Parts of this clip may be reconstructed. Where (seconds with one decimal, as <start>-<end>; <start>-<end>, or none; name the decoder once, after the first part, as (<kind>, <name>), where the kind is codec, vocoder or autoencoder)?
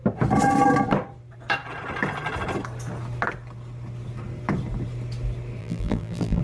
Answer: 5.6-6.4 (vocoder, BigVGAN v2)